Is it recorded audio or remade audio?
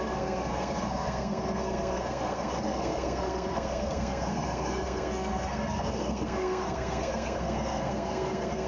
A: remade